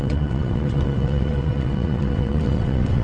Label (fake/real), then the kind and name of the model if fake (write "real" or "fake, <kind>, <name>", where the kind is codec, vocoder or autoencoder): fake, vocoder, WaveNeXt